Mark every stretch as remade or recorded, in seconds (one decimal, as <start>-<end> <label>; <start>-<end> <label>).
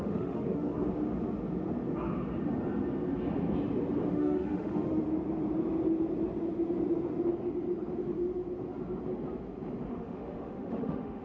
0.0-0.7 remade; 0.7-4.1 recorded; 4.1-5.0 remade; 5.0-9.9 recorded; 9.9-11.2 remade